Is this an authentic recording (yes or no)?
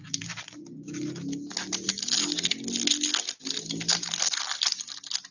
yes